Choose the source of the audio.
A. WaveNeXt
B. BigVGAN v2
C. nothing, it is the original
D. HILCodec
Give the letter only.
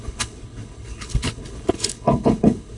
D